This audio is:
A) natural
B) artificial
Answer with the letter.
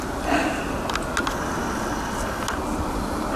A